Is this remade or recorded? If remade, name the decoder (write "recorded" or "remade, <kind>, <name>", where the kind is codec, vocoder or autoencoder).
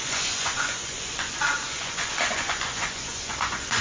remade, vocoder, Vocos